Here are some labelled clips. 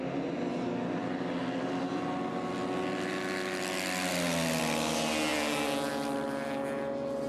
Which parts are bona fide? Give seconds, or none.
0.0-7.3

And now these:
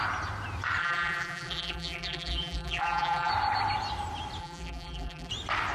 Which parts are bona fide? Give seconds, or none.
0.0-0.8; 3.3-4.4; 5.3-5.7

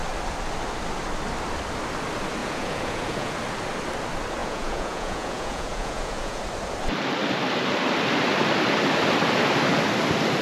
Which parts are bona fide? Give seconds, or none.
0.0-2.4; 3.3-4.4; 6.4-10.4